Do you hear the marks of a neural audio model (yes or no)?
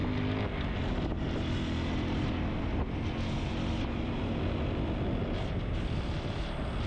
no